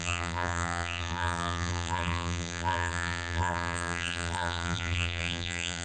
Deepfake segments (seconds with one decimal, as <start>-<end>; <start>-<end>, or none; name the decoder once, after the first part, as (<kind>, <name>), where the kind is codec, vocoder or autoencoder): 0.0-5.8 (vocoder, BigVGAN v2)